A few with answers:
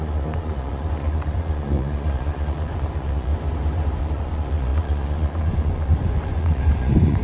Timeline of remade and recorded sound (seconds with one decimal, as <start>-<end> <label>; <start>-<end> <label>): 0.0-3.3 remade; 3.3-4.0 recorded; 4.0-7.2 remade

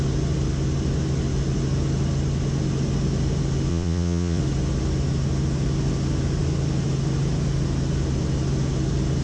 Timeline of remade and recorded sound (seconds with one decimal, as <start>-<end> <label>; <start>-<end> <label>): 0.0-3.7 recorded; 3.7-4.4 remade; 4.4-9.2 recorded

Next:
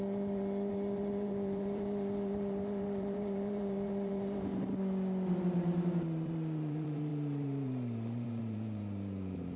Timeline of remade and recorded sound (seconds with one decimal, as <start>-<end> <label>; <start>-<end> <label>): 0.0-4.5 remade; 4.5-5.4 recorded; 5.4-9.6 remade